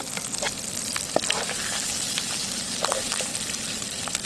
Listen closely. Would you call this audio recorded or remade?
recorded